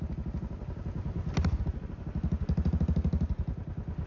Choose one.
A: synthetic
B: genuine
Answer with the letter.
B